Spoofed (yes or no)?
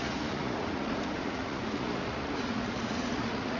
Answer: yes